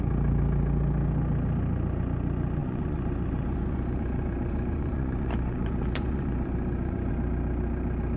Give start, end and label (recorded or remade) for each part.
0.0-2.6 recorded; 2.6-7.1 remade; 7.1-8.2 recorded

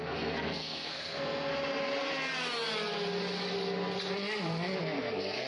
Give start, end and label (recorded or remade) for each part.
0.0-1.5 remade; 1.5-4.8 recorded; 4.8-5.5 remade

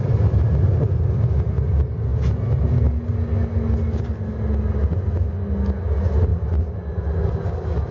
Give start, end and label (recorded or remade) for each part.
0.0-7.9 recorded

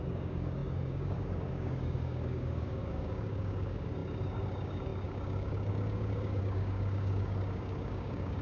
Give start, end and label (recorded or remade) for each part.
0.0-8.4 remade

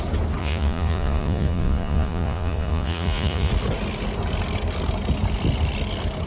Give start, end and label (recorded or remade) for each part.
0.0-0.4 recorded; 0.4-3.5 remade; 3.5-6.3 recorded

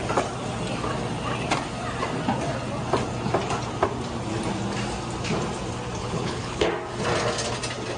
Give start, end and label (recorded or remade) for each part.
0.0-6.0 recorded; 6.0-6.7 remade; 6.7-8.0 recorded

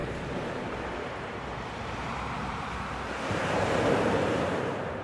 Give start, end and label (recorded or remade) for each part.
0.0-5.0 remade

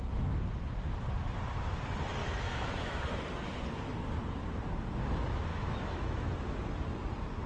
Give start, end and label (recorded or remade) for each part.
0.0-2.2 recorded; 2.2-3.3 remade; 3.3-5.5 recorded; 5.5-6.3 remade; 6.3-7.5 recorded